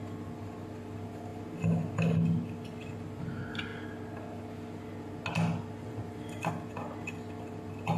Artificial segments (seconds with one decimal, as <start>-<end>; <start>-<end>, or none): none

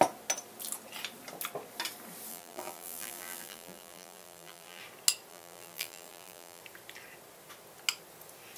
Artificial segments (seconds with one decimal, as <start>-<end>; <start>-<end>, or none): 2.3-4.8; 5.3-6.6

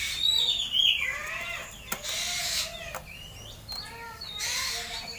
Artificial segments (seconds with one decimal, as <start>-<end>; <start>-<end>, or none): none

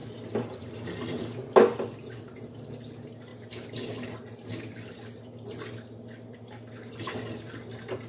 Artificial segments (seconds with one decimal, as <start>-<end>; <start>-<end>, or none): 0.0-1.4

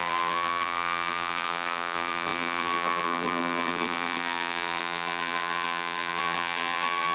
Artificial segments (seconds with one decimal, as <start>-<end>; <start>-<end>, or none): 0.0-7.1

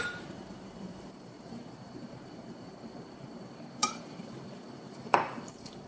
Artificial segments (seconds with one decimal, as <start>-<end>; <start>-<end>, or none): 0.0-5.9